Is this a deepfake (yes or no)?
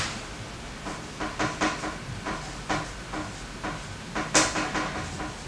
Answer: no